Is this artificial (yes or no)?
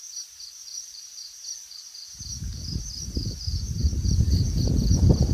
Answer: yes